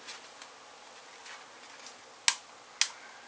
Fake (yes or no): no